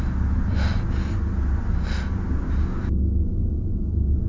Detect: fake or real real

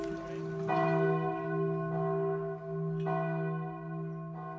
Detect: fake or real real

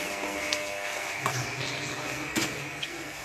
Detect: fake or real fake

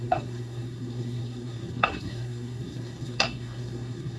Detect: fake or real fake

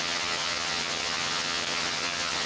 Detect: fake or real fake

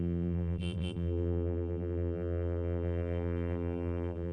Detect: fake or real fake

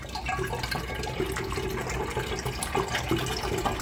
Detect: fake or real real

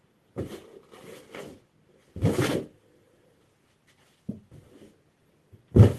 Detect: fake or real real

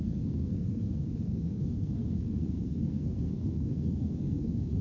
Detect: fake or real fake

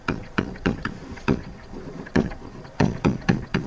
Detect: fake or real fake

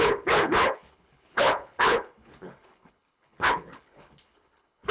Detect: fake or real fake